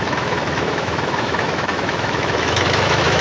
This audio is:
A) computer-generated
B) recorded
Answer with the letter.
A